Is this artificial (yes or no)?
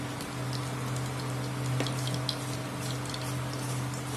no